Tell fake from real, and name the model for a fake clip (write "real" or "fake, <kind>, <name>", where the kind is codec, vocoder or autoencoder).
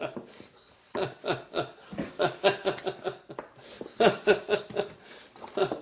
real